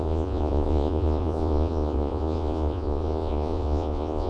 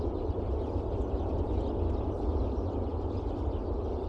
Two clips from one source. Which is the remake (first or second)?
first